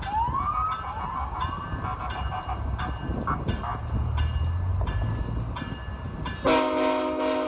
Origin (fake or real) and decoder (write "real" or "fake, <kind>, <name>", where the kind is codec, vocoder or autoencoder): real